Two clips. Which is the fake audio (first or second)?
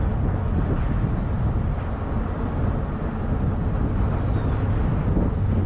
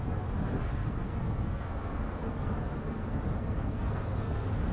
second